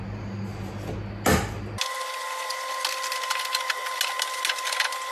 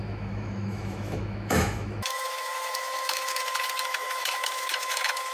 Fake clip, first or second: second